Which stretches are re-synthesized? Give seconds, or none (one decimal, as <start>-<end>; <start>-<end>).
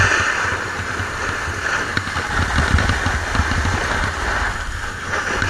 none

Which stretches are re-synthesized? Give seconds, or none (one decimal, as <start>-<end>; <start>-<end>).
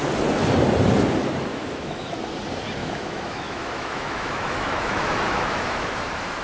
1.5-2.1; 2.8-6.4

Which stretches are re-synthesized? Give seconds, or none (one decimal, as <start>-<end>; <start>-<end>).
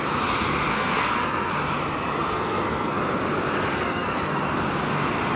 0.7-1.5; 2.2-3.0; 3.7-4.4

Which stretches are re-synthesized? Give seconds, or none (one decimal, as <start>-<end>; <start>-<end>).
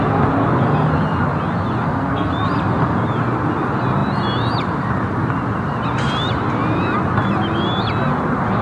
1.8-2.3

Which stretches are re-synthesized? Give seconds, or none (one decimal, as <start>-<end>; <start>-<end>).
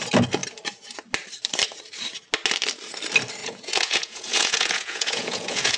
3.4-5.8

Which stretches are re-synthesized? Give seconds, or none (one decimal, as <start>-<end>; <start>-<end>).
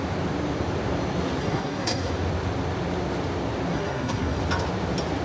1.4-2.1; 3.7-4.4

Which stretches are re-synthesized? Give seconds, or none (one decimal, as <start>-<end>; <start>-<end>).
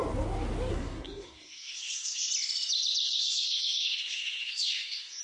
0.7-2.3; 3.0-5.2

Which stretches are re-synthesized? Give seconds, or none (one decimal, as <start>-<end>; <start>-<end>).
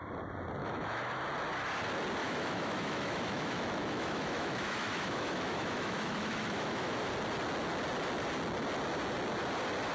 0.6-1.2; 2.2-7.1